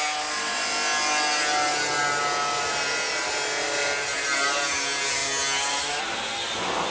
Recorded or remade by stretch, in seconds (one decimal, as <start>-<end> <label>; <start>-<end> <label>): 0.0-6.9 recorded